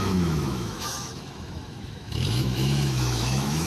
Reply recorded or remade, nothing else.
remade